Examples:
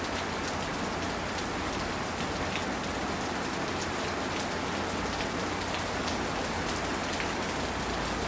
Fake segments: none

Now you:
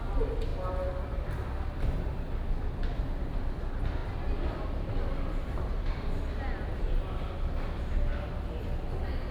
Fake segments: none

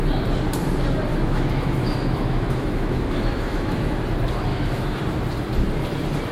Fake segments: 1.1-4.0 (autoencoder, DAC-VAE); 4.5-5.0

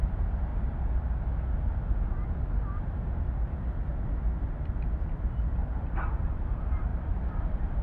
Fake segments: 0.0-0.5 (vocoder, BigVGAN v2); 5.0-7.8

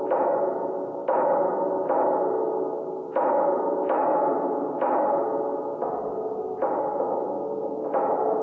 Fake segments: 0.0-1.0 (vocoder, BigVGAN v2); 3.6-4.1; 6.0-6.9; 7.7-8.4

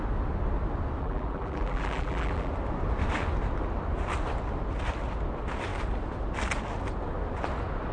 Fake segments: 1.0-2.5 (vocoder, BigVGAN v2)